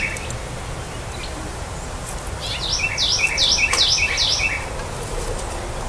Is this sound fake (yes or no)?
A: no